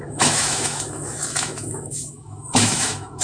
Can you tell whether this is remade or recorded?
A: remade